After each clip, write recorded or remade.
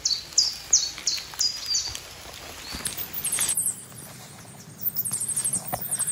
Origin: recorded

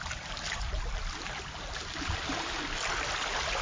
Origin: recorded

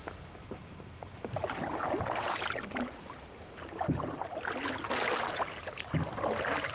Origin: recorded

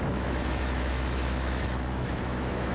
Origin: remade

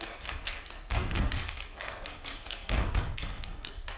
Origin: remade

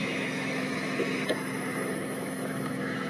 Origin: remade